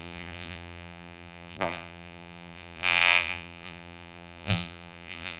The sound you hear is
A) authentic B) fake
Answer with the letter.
B